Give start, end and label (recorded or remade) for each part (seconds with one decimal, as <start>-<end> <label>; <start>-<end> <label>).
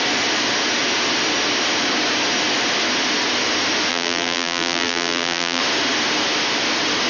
0.0-3.9 recorded; 3.9-5.6 remade; 5.6-7.1 recorded